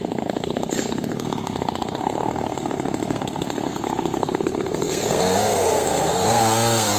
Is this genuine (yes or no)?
no